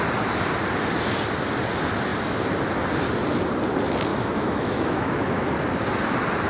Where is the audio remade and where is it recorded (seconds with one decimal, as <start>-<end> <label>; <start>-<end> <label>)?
0.0-4.1 recorded; 4.1-5.5 remade; 5.5-6.5 recorded